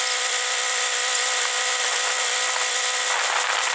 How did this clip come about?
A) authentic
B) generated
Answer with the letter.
A